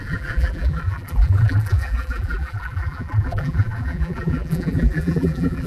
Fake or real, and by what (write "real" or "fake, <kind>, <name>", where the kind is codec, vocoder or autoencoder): fake, vocoder, BigVGAN v2